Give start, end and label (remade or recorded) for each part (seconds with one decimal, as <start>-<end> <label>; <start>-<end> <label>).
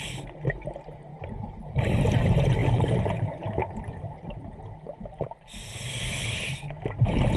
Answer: 0.0-1.1 recorded; 1.1-1.8 remade; 1.8-2.6 recorded; 2.6-4.6 remade; 4.6-7.4 recorded